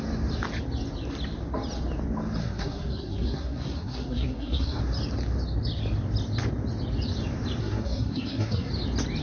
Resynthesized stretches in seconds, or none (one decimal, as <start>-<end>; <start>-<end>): 2.4-4.8; 7.6-8.7